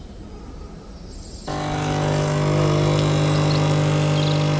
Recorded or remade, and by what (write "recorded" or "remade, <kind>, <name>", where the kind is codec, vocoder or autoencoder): recorded